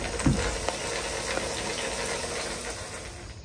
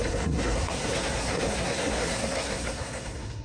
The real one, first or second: first